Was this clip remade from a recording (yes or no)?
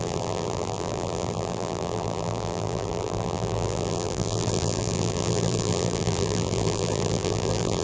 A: yes